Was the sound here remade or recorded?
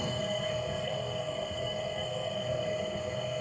remade